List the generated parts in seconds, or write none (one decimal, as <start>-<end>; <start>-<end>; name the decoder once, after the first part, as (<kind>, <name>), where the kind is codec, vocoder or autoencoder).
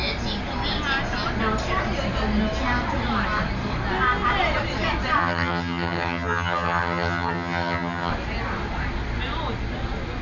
5.2-8.1 (vocoder, HiFi-GAN)